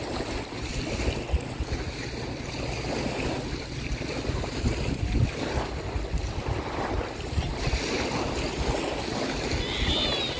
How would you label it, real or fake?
real